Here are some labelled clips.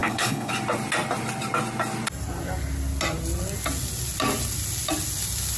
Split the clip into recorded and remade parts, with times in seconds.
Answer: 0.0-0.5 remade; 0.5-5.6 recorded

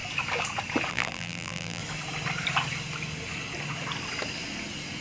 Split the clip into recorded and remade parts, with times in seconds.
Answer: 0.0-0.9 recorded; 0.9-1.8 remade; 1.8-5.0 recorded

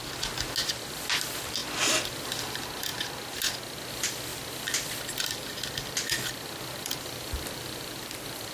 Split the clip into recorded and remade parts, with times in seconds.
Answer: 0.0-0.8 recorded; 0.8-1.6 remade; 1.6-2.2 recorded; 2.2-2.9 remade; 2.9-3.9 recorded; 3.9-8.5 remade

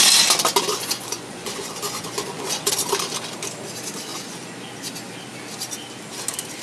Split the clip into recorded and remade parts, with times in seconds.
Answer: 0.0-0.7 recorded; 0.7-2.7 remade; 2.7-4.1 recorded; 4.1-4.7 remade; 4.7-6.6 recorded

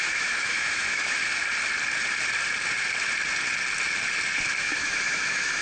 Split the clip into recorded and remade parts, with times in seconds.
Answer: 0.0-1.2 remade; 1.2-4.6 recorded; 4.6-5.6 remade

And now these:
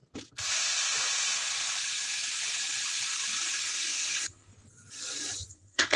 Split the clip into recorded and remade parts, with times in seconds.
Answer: 0.0-3.6 recorded; 3.6-4.5 remade; 4.5-5.5 recorded; 5.5-6.0 remade

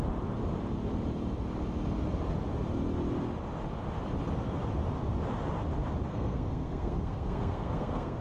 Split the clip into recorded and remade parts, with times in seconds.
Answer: 0.0-6.1 recorded; 6.1-8.2 remade

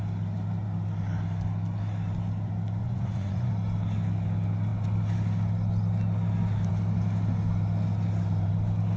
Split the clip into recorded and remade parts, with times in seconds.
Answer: 0.0-2.8 recorded; 2.8-3.5 remade; 3.5-9.0 recorded